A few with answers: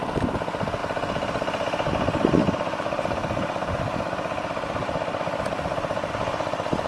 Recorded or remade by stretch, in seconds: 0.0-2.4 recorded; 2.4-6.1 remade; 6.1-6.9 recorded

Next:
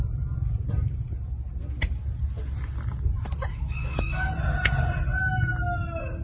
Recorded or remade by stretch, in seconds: 0.0-3.5 recorded; 3.5-4.3 remade; 4.3-6.2 recorded